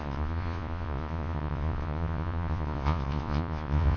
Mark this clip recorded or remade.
remade